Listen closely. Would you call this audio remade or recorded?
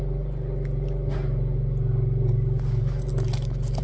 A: recorded